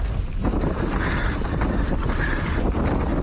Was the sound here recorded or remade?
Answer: recorded